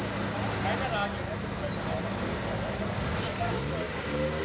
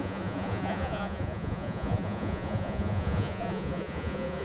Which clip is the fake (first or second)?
second